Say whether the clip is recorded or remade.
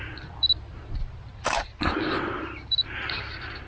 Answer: recorded